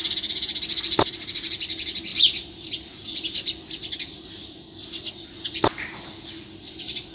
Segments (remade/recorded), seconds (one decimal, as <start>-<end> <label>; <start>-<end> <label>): 0.0-7.1 recorded

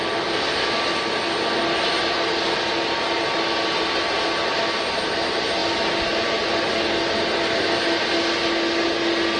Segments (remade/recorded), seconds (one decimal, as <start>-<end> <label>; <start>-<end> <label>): 0.0-9.4 recorded